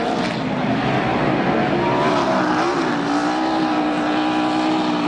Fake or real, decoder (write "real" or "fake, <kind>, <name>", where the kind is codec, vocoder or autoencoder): real